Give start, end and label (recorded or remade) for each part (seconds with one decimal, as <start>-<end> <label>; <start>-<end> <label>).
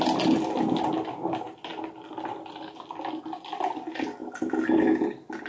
0.0-5.5 recorded